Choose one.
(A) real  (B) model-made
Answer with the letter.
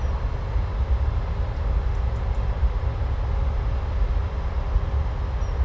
A